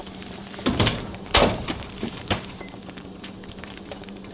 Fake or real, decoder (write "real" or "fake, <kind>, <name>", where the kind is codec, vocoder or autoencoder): fake, vocoder, BigVGAN v2